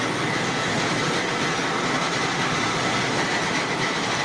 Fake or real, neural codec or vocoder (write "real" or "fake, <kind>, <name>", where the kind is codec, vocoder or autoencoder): real